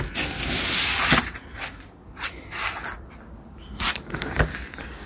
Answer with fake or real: real